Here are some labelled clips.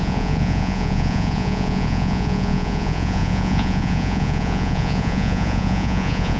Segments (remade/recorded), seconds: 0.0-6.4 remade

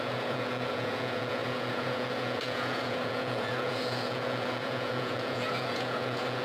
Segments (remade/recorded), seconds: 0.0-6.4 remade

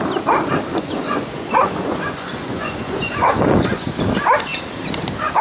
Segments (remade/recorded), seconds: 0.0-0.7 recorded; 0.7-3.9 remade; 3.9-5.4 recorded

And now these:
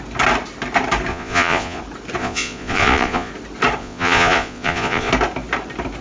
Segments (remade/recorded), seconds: 0.0-1.1 recorded; 1.1-1.8 remade; 1.8-2.2 recorded; 2.2-3.3 remade; 3.3-3.8 recorded; 3.8-5.1 remade; 5.1-6.0 recorded

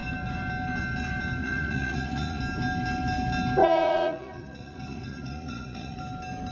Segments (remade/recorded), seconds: 0.0-1.4 recorded; 1.4-2.4 remade; 2.4-3.6 recorded; 3.6-6.0 remade; 6.0-6.5 recorded